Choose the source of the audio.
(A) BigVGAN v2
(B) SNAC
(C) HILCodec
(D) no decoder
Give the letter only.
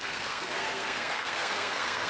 B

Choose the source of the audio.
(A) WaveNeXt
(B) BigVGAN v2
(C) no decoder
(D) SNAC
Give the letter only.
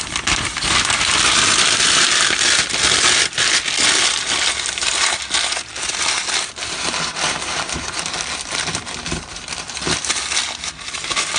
C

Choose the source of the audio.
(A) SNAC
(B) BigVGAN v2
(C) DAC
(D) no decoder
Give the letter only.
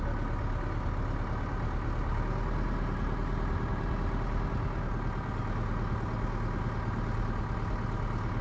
D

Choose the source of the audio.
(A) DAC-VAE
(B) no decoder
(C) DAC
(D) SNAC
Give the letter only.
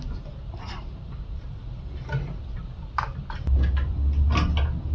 B